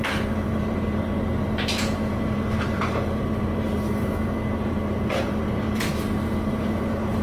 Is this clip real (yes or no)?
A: no